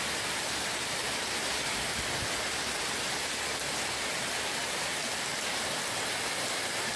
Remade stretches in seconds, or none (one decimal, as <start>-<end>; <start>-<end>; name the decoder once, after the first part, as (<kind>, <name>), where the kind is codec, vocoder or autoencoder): none